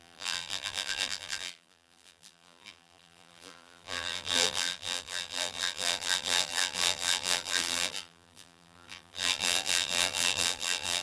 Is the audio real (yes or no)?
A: no